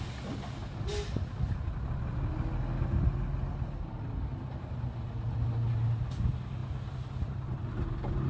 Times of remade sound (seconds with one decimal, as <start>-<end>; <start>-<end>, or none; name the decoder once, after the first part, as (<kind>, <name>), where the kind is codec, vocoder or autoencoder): none